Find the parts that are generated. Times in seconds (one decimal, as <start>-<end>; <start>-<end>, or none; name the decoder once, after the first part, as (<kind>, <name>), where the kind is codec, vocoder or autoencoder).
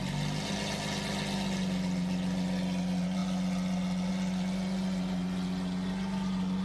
none